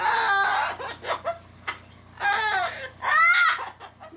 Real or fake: real